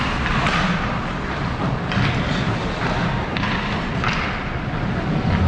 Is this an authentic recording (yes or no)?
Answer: yes